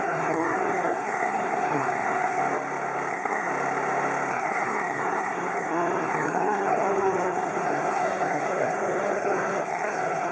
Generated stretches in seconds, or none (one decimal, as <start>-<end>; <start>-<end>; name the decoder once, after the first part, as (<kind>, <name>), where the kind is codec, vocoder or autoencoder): 0.0-2.4 (codec, SNAC); 3.1-3.5; 4.3-10.3